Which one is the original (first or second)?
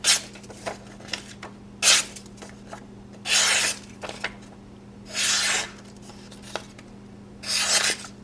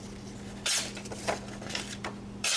first